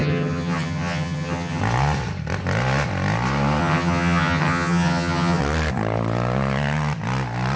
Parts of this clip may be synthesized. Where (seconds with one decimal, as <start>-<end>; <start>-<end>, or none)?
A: 0.0-1.6; 3.6-5.4